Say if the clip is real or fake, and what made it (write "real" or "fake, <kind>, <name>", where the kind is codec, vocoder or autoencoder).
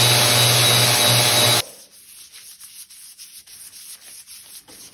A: real